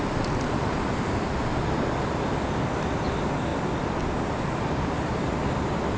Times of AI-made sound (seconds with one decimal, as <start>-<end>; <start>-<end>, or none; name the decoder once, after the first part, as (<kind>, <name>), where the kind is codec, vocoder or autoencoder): none